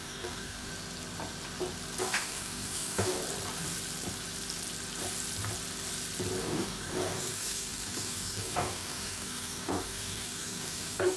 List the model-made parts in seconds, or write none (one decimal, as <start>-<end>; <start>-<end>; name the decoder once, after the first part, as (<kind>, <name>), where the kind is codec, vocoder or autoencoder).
0.0-0.7 (codec, DAC); 2.0-3.2; 6.4-11.2

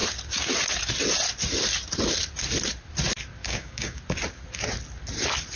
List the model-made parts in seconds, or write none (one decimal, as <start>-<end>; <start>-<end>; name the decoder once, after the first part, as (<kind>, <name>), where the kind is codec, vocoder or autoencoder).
3.4-4.0 (codec, DAC)

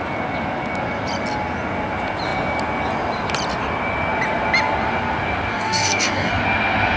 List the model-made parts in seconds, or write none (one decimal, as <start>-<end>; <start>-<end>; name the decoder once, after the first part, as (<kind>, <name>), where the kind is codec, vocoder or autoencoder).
5.5-6.3 (codec, DAC)

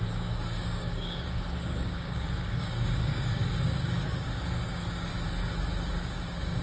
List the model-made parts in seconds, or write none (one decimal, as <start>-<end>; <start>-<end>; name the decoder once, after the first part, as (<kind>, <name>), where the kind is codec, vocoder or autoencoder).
0.0-5.1 (codec, DAC); 5.9-6.6

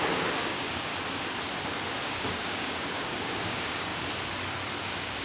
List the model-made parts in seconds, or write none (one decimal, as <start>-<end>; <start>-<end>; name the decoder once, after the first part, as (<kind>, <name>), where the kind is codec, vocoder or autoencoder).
0.0-0.9 (codec, DAC); 2.0-3.9; 4.8-5.2